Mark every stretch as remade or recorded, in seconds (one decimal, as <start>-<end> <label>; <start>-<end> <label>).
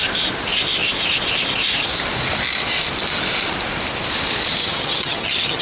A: 0.0-4.6 recorded; 4.6-5.6 remade